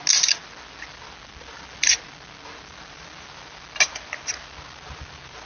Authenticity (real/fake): real